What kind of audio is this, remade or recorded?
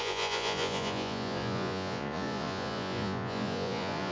remade